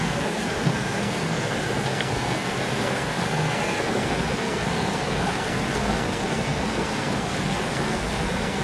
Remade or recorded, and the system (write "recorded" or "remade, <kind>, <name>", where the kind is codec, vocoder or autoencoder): remade, codec, SNAC